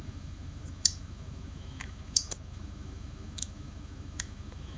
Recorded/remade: remade